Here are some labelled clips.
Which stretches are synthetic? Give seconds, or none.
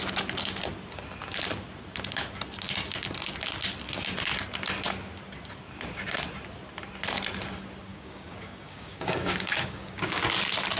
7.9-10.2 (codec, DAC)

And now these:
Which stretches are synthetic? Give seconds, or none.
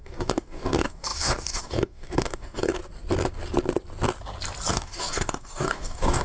0.0-2.8 (codec, DAC); 4.7-6.2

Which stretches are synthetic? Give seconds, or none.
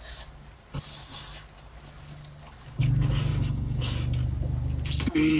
3.3-3.8 (codec, DAC)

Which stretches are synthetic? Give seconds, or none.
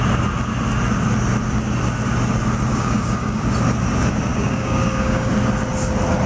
2.7-3.4 (codec, DAC); 4.3-5.3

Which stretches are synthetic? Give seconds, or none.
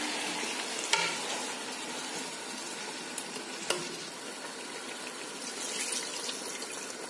none